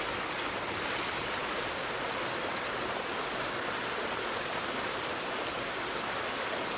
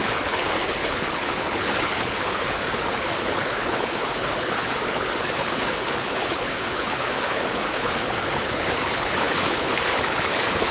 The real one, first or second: first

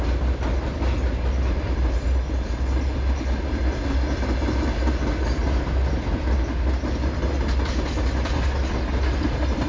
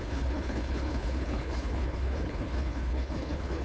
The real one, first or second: first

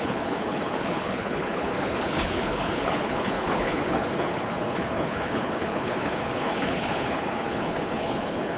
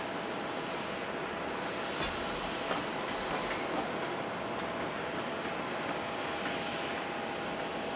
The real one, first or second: second